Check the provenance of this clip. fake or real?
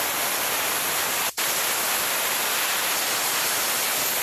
real